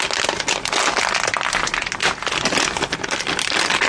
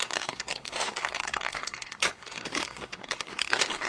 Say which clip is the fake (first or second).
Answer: second